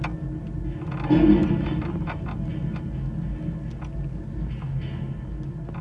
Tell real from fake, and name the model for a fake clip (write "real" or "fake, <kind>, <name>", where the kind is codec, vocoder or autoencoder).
real